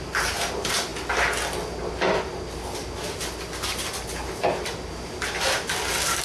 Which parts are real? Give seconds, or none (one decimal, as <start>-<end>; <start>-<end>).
0.0-6.2